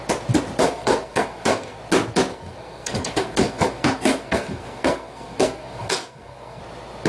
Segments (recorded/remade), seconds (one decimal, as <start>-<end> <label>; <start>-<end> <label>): 0.0-0.6 recorded; 0.6-1.8 remade; 1.8-2.3 recorded; 2.3-6.6 remade; 6.6-7.1 recorded